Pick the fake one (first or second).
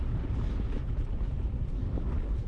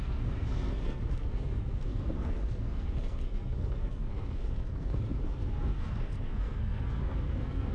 second